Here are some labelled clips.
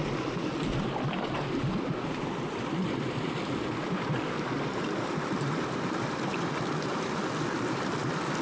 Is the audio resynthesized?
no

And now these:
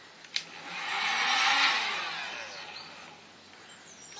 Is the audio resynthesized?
no